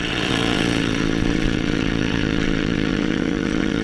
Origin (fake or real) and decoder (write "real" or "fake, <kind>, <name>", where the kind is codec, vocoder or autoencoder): fake, vocoder, Vocos